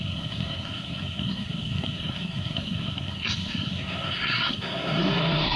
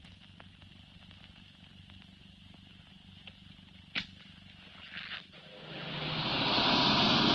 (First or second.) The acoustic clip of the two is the second